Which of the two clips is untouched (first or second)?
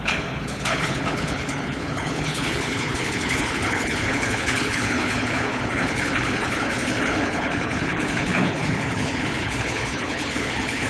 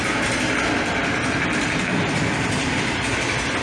second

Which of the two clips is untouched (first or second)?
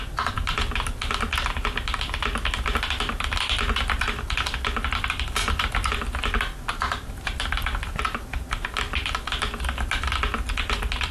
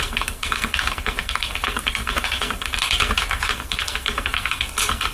first